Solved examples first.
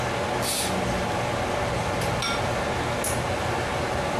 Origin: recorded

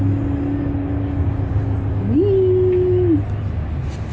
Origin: recorded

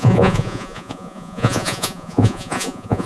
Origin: remade